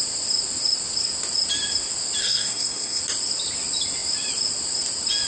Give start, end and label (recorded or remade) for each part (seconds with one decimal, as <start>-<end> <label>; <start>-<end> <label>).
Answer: 0.0-2.2 recorded; 2.2-3.0 remade; 3.0-5.3 recorded